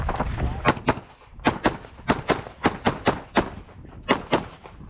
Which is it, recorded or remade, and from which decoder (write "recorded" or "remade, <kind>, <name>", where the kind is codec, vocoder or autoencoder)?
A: recorded